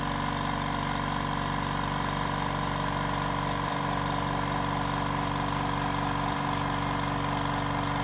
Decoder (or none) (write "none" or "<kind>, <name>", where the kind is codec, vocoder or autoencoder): none